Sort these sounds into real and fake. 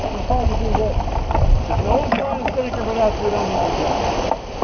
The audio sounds real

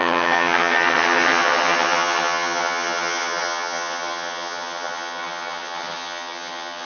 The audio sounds fake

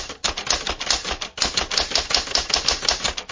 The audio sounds real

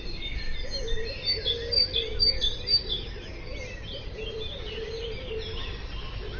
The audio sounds real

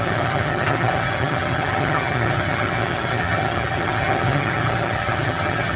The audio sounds fake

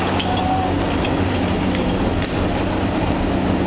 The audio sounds real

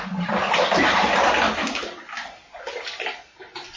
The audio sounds real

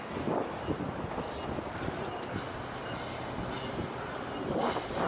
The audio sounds real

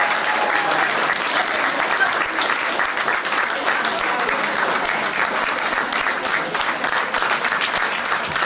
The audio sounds real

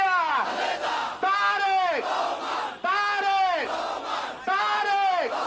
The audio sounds real